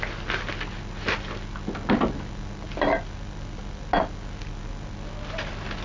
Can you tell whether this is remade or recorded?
recorded